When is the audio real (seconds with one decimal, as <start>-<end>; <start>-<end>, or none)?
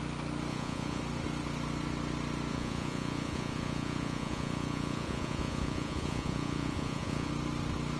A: 0.0-0.5; 1.0-2.5; 7.3-8.0